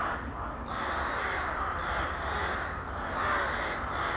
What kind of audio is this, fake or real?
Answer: real